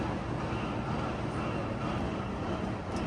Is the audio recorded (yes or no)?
yes